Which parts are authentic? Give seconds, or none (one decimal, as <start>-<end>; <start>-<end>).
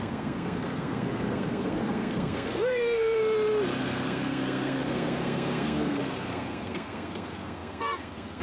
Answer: 3.2-3.8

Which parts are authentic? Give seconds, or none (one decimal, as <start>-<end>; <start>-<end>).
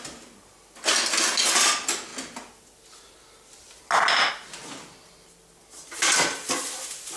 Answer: 0.0-7.2